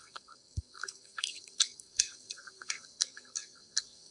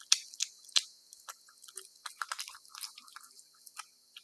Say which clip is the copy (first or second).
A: first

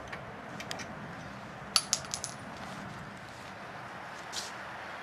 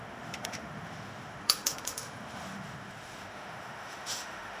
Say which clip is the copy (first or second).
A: second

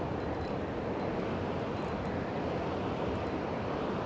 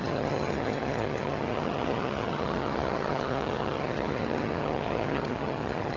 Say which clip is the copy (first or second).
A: second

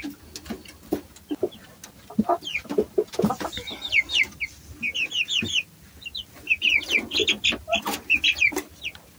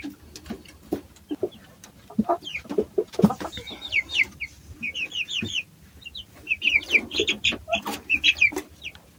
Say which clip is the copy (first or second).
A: second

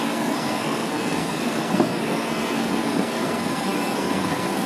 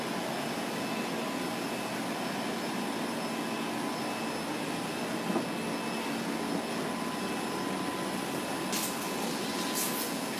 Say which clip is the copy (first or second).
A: first